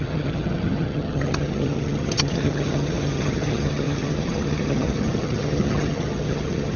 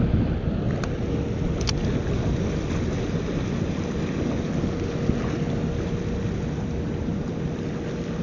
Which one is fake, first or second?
first